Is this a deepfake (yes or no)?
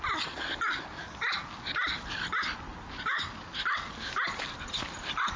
no